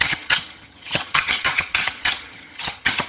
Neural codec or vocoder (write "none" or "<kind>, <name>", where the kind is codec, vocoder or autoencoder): vocoder, HiFi-GAN